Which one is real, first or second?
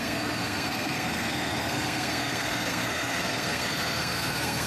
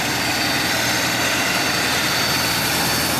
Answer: second